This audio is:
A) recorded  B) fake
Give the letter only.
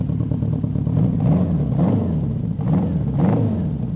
A